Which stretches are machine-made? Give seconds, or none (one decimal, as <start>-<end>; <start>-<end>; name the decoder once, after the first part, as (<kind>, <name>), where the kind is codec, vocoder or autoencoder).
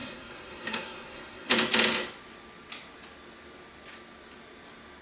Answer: 0.0-1.5 (codec, SNAC)